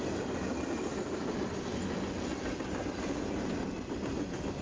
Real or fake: real